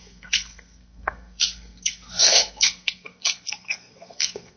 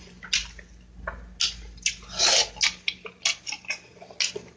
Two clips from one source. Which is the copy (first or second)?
first